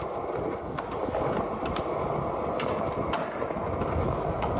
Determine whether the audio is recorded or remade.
recorded